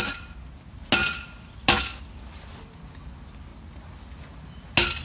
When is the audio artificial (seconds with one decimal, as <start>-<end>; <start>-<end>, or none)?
none